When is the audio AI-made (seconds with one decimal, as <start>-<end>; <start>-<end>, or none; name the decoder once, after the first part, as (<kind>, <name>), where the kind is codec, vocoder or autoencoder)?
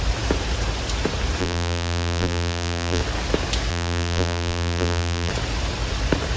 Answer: 1.4-3.0 (vocoder, BigVGAN v2); 3.7-5.3